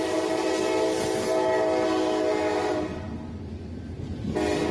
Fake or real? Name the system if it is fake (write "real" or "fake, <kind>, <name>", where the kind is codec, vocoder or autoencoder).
real